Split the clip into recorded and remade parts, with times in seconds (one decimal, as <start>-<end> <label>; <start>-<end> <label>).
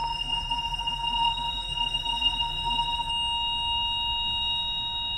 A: 0.0-3.1 remade; 3.1-5.2 recorded